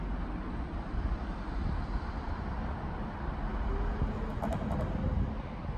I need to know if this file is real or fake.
real